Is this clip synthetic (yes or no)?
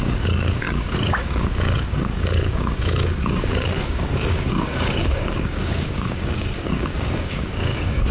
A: yes